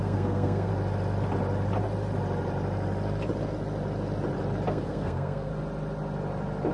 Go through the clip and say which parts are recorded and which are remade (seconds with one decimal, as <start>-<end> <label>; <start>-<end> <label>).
0.0-0.7 remade; 0.7-4.7 recorded; 4.7-5.5 remade; 5.5-6.7 recorded